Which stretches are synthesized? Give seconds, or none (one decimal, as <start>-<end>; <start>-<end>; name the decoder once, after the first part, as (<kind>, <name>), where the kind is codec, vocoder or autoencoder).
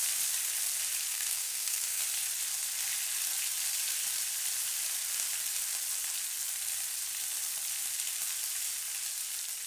1.1-2.0 (codec, SNAC)